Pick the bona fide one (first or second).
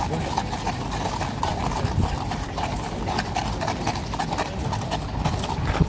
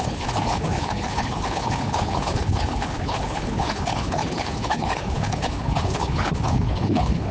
first